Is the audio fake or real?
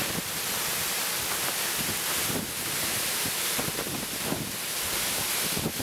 real